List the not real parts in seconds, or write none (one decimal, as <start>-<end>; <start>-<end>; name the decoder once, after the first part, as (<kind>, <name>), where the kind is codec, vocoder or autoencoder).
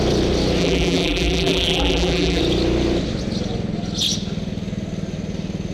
0.6-2.4 (vocoder, BigVGAN v2)